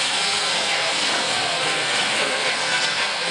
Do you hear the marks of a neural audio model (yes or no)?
yes